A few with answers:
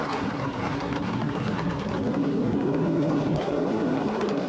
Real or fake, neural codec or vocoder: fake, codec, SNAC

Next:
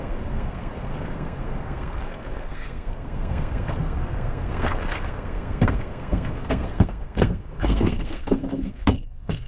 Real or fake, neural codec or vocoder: fake, codec, SNAC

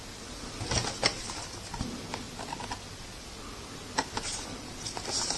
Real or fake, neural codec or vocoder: real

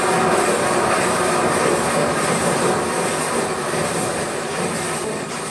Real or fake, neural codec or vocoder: real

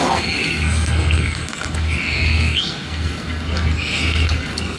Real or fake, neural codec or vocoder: fake, codec, SNAC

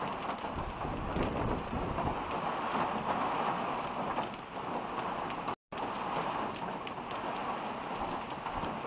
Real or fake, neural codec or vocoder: real